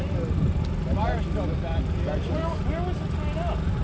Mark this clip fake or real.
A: real